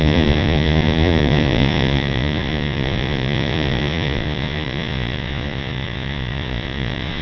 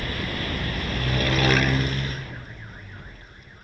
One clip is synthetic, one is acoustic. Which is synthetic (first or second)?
first